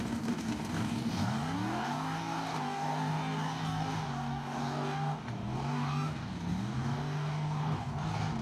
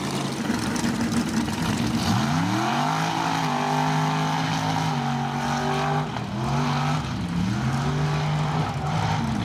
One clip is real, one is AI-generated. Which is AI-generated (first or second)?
first